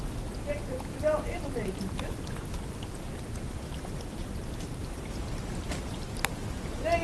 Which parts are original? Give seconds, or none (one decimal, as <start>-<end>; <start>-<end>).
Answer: 0.0-0.9; 2.1-4.8; 6.4-7.0